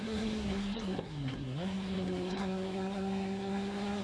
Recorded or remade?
remade